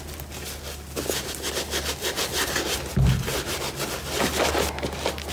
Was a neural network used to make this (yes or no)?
no